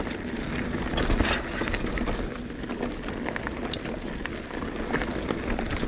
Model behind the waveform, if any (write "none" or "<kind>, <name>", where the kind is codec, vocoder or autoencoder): none